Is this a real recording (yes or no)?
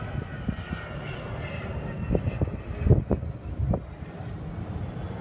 yes